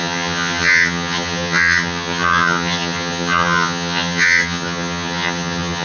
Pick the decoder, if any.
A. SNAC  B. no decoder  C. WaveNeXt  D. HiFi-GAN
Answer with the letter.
D